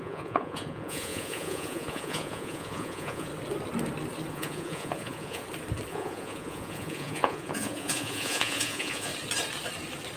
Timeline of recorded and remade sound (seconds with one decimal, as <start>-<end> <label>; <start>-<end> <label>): 0.0-3.3 remade; 3.3-4.3 recorded; 4.3-5.4 remade; 5.4-5.9 recorded; 5.9-9.1 remade; 9.1-10.2 recorded

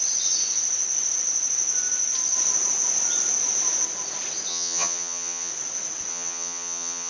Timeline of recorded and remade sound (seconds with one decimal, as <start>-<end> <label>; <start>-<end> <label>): 0.0-4.5 recorded; 4.5-5.5 remade; 5.5-6.1 recorded; 6.1-7.1 remade

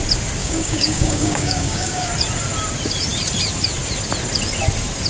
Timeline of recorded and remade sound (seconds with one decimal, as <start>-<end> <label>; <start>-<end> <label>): 0.0-0.4 recorded; 0.4-2.1 remade; 2.1-5.1 recorded

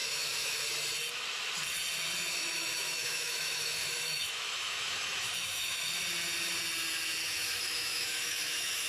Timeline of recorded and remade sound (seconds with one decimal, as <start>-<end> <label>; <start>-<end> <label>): 0.0-0.7 remade; 0.7-2.4 recorded; 2.4-5.9 remade; 5.9-7.2 recorded; 7.2-8.9 remade

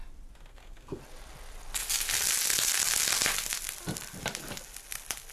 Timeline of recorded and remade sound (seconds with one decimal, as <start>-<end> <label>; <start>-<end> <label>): 0.0-0.5 recorded; 0.5-1.0 remade; 1.0-5.3 recorded

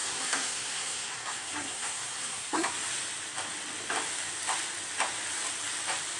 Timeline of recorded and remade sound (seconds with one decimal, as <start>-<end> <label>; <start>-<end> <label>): 0.0-2.7 remade; 2.7-6.2 recorded

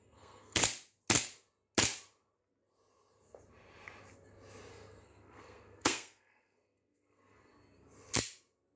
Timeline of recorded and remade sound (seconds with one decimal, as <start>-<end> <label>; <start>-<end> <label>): 0.0-0.6 remade; 0.6-4.7 recorded; 4.7-7.5 remade; 7.5-8.8 recorded

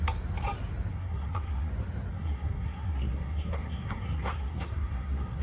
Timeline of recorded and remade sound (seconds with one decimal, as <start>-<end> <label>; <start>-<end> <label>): 0.0-0.9 recorded; 0.9-1.7 remade; 1.7-2.1 recorded; 2.1-5.4 remade